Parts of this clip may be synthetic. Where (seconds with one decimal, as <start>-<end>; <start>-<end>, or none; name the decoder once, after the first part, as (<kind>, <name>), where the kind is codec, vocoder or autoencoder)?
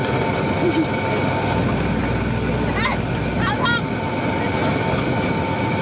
none